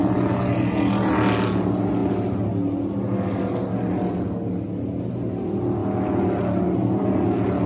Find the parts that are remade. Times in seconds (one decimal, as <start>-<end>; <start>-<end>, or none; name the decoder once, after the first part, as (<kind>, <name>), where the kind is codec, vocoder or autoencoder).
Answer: none